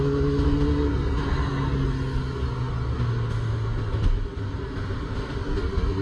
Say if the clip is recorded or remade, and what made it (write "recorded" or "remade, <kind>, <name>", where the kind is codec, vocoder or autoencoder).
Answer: recorded